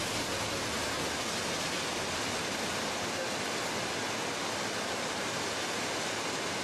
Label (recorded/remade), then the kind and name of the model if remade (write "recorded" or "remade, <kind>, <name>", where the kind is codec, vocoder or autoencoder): recorded